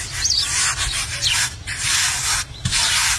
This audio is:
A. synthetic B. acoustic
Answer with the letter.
B